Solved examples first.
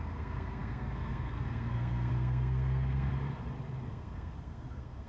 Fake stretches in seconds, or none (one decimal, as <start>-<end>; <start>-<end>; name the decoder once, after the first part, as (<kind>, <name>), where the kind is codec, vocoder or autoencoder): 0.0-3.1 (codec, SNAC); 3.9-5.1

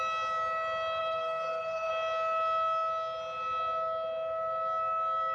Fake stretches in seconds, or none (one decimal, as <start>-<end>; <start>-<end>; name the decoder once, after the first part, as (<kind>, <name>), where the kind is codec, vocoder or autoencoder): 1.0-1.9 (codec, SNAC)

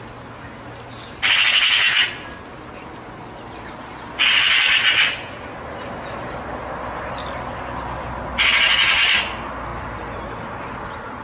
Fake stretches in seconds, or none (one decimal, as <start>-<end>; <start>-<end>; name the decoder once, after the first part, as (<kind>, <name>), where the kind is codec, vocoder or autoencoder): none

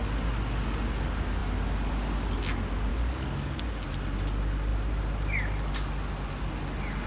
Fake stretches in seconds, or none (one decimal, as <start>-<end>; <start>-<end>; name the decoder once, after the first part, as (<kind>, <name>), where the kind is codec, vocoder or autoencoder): 2.9-3.6 (codec, DAC)

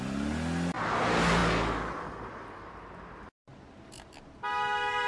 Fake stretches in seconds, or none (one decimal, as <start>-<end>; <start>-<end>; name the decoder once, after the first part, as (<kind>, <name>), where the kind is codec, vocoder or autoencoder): none

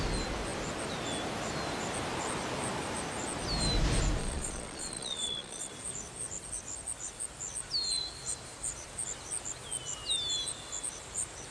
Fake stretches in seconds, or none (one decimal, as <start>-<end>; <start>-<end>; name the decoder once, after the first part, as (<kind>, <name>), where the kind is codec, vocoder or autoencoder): 4.2-5.7 (vocoder, Vocos)